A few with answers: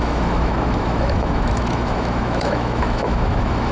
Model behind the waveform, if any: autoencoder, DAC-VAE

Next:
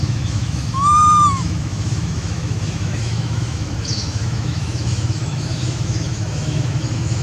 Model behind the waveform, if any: autoencoder, DAC-VAE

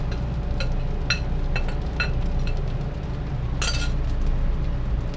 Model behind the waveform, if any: none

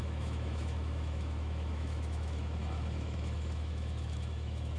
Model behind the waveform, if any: autoencoder, DAC-VAE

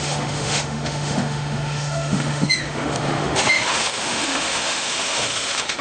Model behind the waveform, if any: autoencoder, DAC-VAE